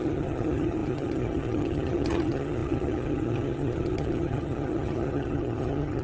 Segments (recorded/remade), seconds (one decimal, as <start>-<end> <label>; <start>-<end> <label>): 0.0-6.0 remade